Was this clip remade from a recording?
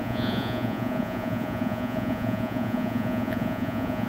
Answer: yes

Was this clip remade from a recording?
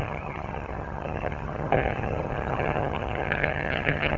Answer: yes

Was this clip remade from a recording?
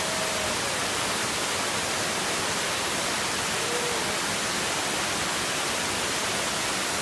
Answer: no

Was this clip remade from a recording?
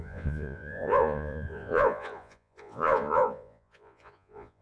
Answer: yes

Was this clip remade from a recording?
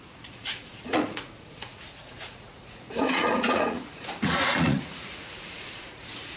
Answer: yes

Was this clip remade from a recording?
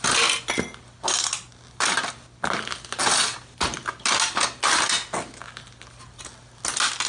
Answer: no